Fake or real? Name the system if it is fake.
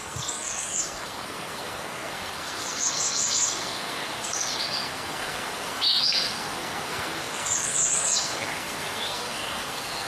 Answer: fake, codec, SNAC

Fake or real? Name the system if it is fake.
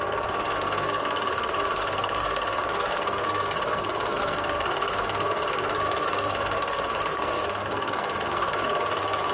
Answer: fake, codec, SNAC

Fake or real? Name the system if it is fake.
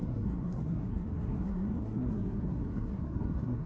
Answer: fake, codec, SNAC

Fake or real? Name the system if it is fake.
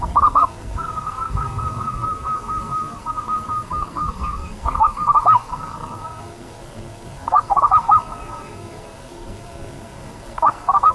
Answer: fake, codec, SNAC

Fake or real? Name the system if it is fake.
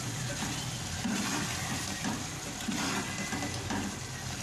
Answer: real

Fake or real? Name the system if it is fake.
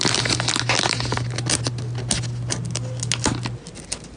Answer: real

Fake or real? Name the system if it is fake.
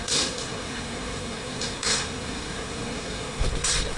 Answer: fake, codec, SNAC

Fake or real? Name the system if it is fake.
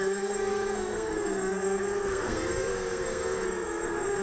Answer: fake, codec, SNAC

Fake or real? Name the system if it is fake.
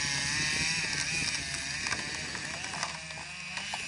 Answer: real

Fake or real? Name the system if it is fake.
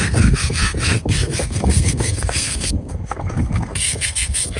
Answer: fake, codec, SNAC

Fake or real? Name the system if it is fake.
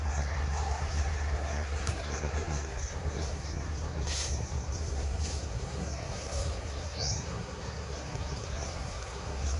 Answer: fake, codec, SNAC